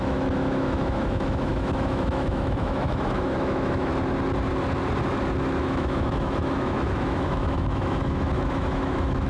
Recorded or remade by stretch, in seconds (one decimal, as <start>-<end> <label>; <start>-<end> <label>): 0.0-3.9 remade; 3.9-5.6 recorded; 5.6-9.3 remade